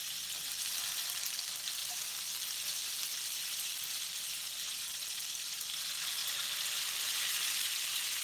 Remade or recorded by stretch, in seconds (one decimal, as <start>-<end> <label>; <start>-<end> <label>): 0.0-0.5 remade; 0.5-1.8 recorded; 1.8-5.8 remade; 5.8-6.2 recorded; 6.2-7.2 remade; 7.2-8.2 recorded